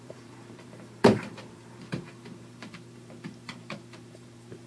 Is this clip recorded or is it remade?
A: remade